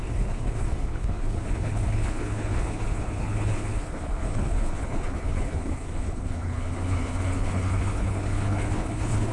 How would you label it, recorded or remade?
remade